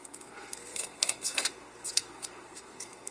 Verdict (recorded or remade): remade